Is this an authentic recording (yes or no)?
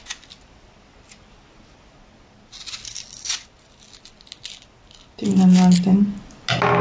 yes